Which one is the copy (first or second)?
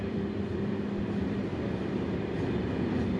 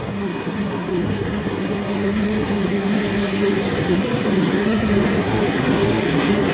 second